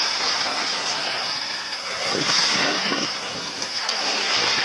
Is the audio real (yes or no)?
no